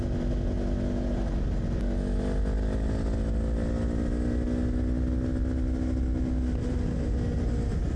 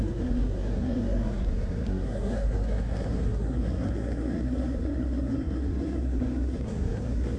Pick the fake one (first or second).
second